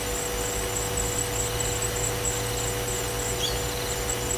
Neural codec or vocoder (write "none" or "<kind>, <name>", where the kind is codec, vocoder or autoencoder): none